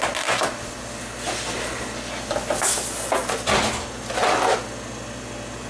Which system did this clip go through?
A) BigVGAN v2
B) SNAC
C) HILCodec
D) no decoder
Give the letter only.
D